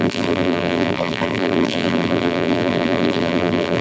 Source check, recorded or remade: remade